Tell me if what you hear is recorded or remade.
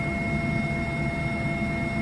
recorded